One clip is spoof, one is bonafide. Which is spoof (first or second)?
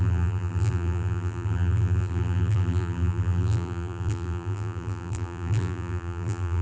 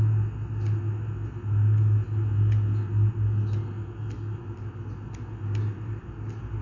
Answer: first